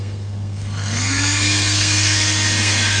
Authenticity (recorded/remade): remade